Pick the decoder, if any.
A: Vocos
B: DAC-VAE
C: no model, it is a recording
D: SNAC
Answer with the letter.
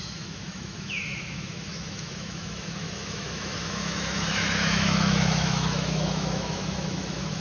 B